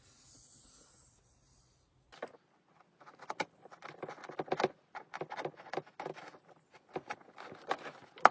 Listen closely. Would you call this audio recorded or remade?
recorded